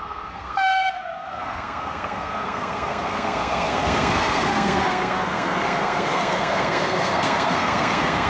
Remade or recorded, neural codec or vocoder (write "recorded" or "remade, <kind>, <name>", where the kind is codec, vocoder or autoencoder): remade, codec, SNAC